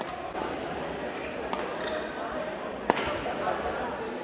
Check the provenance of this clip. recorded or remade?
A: recorded